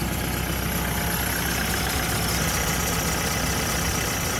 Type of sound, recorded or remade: recorded